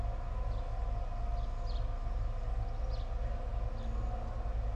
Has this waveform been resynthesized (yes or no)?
no